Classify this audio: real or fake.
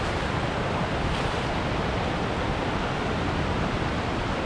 fake